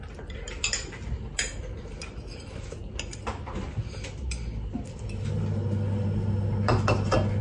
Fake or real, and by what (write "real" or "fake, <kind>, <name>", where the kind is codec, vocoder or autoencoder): real